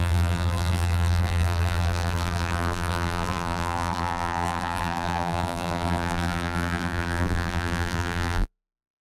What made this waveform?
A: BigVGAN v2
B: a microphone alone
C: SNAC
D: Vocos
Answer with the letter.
A